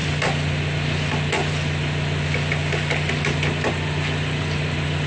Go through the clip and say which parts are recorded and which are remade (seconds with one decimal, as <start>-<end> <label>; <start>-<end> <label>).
0.0-5.1 recorded